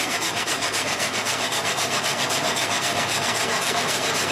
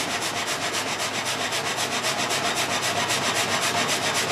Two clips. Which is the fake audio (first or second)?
first